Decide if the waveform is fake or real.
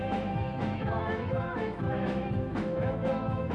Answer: fake